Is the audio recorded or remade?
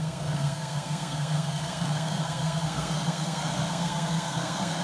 remade